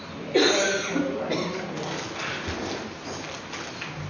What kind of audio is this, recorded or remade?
recorded